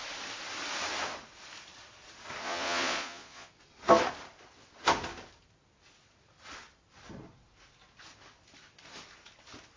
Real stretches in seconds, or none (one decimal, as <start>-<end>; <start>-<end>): 0.0-2.4; 3.5-9.8